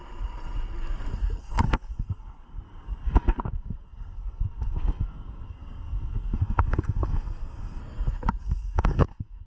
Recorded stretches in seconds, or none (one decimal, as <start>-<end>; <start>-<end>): 0.0-1.4; 7.8-8.4